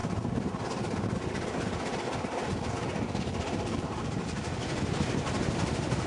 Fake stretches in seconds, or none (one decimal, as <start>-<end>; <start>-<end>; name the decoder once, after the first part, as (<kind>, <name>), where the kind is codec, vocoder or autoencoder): 0.0-0.6 (vocoder, BigVGAN v2)